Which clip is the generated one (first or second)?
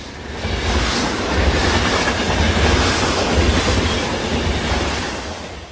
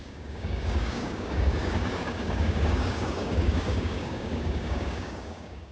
second